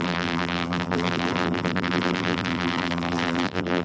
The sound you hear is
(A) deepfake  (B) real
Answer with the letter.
A